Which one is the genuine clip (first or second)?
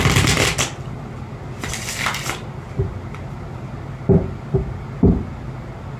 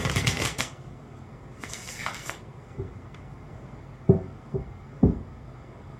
first